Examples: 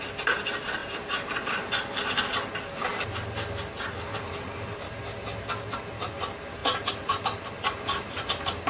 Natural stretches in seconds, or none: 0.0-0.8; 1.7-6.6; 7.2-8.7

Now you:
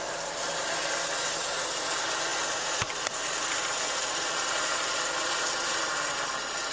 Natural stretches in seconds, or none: 0.0-6.7

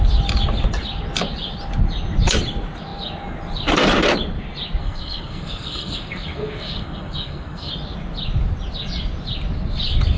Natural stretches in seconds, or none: 0.0-4.8; 7.7-10.2